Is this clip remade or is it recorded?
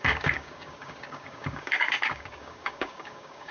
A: remade